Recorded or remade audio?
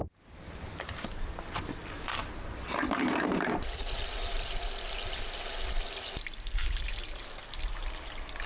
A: recorded